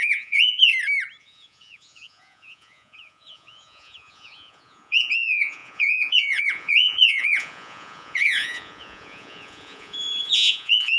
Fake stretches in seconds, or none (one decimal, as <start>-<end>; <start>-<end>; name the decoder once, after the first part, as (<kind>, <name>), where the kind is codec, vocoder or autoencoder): 0.0-0.7 (vocoder, Vocos); 1.2-11.0